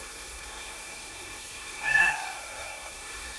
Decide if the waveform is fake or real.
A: fake